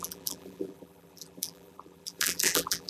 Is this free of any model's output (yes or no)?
no